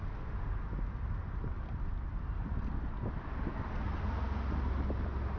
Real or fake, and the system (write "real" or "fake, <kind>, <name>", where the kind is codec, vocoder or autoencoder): real